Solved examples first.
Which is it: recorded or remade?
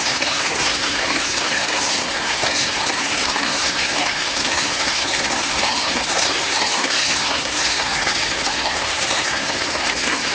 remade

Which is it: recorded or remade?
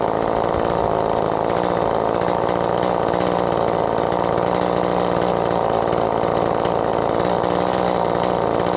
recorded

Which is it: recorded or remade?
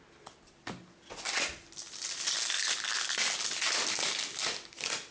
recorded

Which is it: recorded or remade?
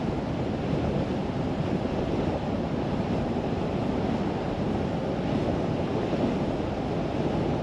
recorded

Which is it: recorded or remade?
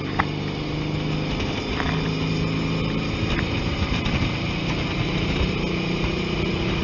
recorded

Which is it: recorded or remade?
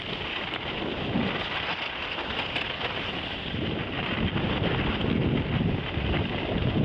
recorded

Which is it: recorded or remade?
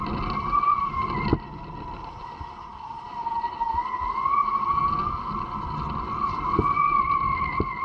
recorded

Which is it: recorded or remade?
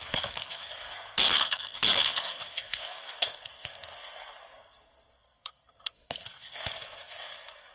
remade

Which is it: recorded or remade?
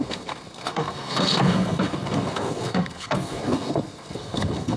remade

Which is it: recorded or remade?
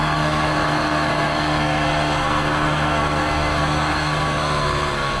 remade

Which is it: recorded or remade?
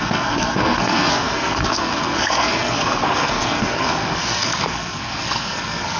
remade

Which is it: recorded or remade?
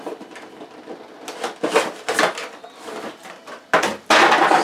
recorded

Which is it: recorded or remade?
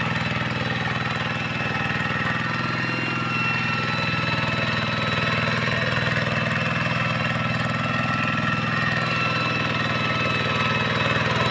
recorded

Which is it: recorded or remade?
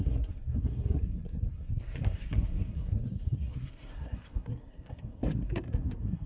remade